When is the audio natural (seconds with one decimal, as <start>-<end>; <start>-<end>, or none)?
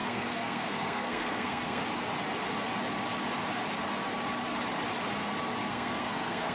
1.8-5.7